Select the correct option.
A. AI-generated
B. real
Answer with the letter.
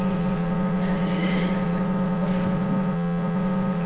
A